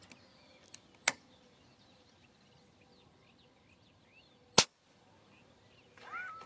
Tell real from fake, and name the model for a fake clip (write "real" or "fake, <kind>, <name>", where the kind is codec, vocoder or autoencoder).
real